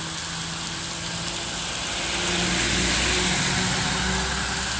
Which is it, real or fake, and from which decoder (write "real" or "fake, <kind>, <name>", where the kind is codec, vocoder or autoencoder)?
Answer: real